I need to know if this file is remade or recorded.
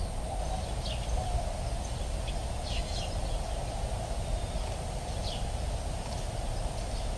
recorded